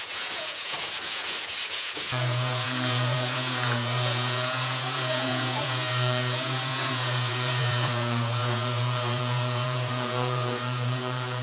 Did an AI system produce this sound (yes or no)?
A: yes